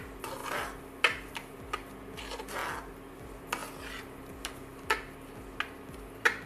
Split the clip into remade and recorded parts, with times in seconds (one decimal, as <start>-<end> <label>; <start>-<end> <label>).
0.0-6.5 recorded